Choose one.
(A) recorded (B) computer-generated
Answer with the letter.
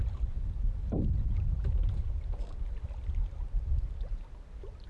A